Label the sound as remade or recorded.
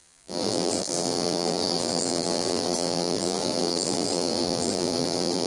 remade